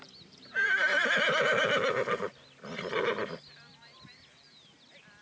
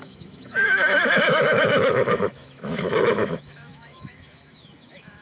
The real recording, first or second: first